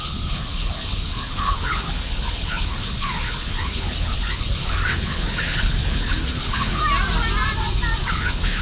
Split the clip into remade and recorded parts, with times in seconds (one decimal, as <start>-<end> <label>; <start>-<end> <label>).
0.0-6.8 remade; 6.8-8.0 recorded; 8.0-8.6 remade